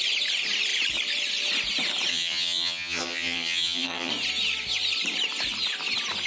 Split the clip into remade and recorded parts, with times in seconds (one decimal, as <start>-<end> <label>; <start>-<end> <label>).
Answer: 0.0-2.1 recorded; 2.1-4.1 remade; 4.1-6.3 recorded